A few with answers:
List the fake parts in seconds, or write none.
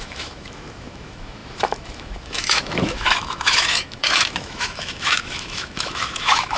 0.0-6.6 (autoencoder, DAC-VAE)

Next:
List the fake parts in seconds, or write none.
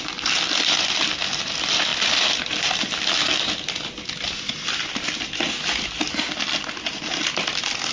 none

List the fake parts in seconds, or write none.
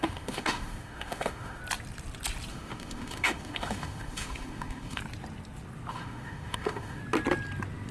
0.0-1.6 (autoencoder, DAC-VAE); 2.5-5.0; 5.9-7.0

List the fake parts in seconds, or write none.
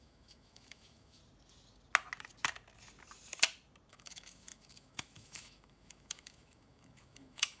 0.0-1.2 (autoencoder, DAC-VAE); 3.9-7.6